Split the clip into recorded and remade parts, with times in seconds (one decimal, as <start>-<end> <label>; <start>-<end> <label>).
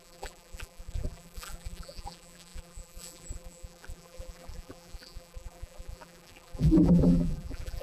0.0-7.8 remade